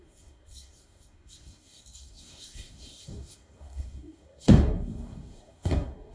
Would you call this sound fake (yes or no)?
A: yes